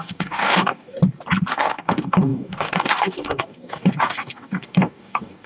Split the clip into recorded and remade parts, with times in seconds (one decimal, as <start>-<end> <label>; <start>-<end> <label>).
0.0-1.0 remade; 1.0-1.5 recorded; 1.5-5.5 remade